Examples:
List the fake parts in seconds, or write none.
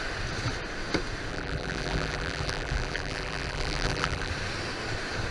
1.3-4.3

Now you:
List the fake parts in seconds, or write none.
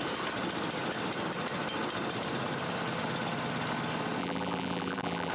4.2-5.3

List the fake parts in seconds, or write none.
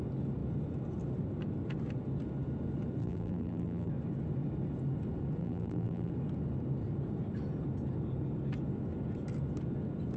3.0-3.9; 5.4-6.1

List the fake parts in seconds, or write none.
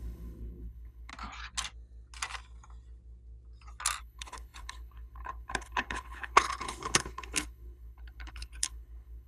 0.0-1.1; 4.0-9.3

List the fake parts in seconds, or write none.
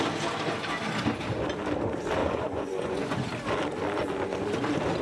2.2-3.3